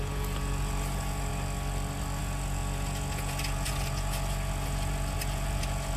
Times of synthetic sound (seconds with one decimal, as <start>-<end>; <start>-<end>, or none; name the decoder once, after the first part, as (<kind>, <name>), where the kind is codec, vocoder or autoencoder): 0.0-1.3 (vocoder, Vocos); 2.2-6.0